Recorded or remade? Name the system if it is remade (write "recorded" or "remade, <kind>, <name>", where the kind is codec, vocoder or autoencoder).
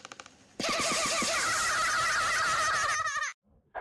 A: recorded